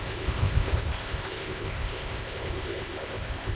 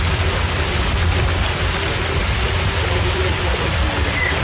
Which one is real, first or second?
second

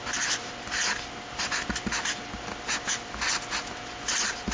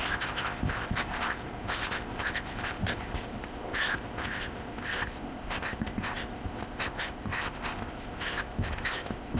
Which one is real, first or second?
first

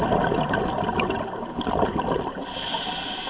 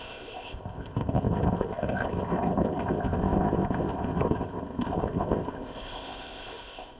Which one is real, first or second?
first